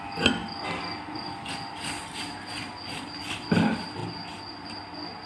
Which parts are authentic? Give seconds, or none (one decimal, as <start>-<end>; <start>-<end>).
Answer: 0.0-5.3